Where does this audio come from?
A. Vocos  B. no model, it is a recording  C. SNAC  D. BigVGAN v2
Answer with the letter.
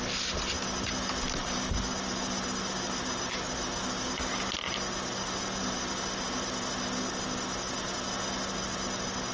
B